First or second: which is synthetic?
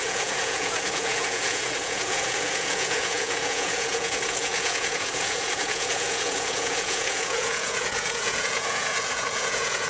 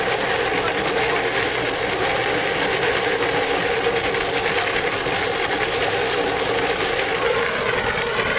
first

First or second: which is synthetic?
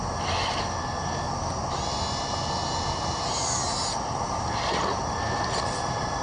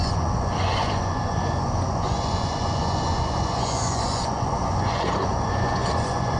second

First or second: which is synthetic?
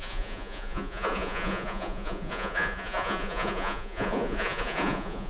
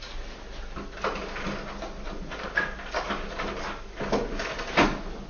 first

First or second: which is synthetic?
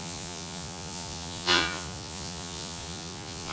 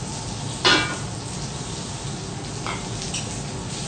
first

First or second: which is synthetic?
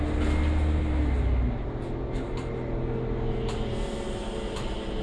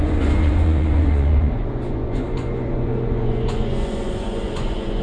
second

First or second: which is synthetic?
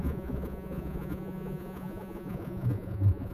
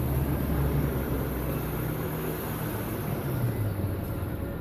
first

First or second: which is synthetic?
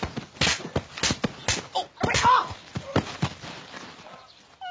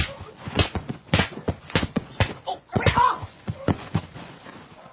second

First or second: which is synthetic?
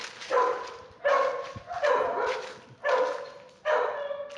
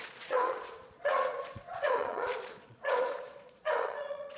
second